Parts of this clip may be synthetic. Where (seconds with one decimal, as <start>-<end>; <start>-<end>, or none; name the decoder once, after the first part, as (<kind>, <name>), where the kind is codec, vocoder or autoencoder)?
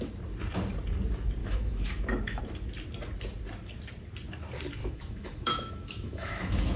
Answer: 1.4-2.4 (autoencoder, DAC-VAE); 4.8-6.8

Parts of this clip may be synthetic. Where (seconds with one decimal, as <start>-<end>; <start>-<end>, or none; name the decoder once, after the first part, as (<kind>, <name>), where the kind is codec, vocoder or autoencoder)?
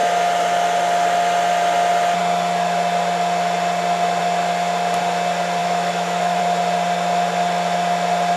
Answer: 5.6-6.4 (autoencoder, DAC-VAE)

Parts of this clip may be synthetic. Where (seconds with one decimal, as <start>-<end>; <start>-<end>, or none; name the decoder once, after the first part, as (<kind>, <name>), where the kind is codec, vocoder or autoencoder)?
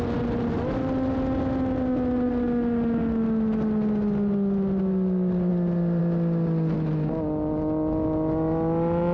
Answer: none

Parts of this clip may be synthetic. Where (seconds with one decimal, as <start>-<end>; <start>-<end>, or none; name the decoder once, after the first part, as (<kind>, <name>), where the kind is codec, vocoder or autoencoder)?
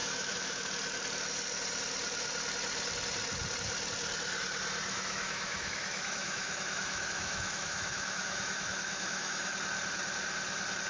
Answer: 0.0-0.7 (autoencoder, DAC-VAE); 4.9-9.5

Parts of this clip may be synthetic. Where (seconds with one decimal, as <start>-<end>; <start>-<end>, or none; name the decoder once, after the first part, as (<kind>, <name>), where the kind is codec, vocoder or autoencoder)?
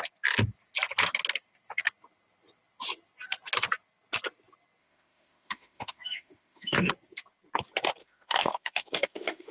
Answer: 4.8-6.9 (autoencoder, DAC-VAE); 8.0-9.5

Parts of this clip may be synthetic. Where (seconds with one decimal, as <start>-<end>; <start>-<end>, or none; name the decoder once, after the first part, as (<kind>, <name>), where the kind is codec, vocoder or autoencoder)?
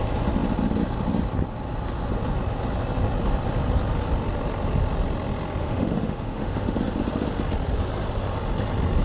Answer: 5.6-6.8 (autoencoder, DAC-VAE)